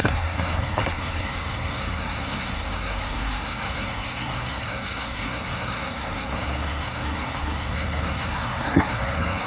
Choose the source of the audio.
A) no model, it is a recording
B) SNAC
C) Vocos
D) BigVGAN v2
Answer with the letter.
B